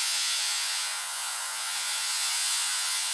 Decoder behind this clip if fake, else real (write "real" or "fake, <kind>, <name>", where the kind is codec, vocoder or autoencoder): fake, vocoder, Vocos